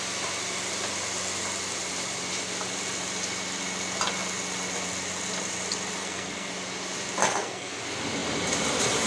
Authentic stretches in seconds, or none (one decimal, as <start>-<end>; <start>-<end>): 0.0-6.0; 6.5-7.2; 7.8-9.1

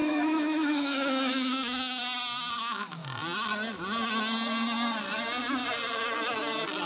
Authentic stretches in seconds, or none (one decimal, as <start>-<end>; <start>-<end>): 2.0-2.6; 3.0-6.9

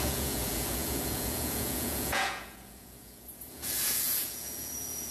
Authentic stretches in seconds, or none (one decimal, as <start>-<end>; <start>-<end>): none

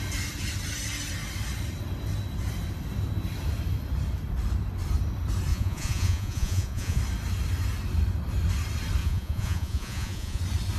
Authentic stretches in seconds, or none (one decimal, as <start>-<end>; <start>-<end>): 0.0-5.5; 7.0-9.0; 10.4-10.8

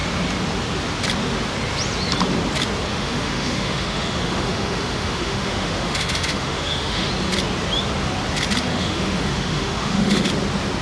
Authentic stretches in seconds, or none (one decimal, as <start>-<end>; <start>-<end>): 0.0-2.9; 7.1-8.7; 10.3-10.8

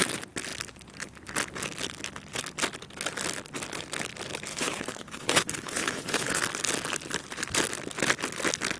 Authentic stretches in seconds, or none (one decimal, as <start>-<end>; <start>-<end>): 0.0-4.5; 6.4-8.8

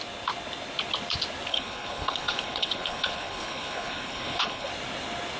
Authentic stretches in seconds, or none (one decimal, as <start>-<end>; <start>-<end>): 0.0-1.5; 4.7-5.4

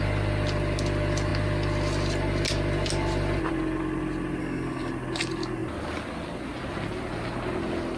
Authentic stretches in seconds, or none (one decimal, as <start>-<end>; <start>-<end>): 0.0-4.4; 4.9-8.0